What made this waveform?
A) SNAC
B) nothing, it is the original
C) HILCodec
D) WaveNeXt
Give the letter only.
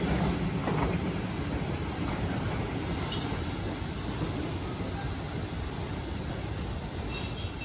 B